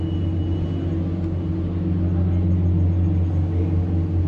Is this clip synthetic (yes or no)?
no